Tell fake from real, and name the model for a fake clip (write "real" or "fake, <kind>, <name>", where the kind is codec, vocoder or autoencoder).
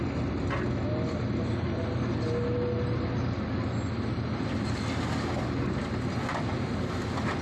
real